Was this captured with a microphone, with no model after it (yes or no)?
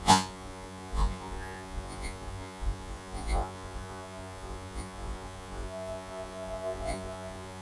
no